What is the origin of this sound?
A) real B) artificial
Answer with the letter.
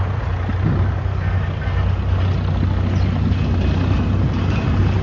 A